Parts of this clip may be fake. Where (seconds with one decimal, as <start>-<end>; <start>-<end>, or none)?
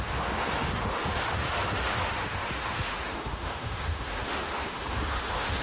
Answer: 0.0-5.6